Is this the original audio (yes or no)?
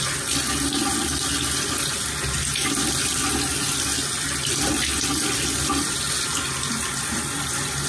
yes